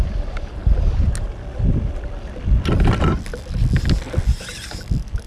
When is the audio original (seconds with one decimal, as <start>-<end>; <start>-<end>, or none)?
0.0-5.3